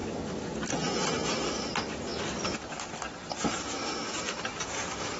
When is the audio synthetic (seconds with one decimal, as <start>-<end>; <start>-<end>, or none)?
none